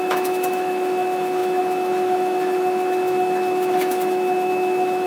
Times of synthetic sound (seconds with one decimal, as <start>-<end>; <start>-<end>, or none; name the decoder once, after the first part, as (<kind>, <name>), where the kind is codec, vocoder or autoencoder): 0.0-5.1 (autoencoder, DAC-VAE)